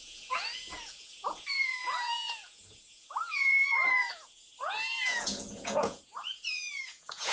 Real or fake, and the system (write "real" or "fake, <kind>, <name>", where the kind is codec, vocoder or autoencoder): fake, vocoder, Vocos